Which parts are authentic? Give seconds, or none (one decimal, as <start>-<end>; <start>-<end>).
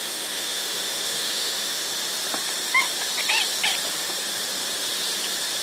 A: 1.9-5.6